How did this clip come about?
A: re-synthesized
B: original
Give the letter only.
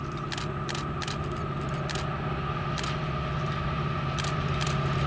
B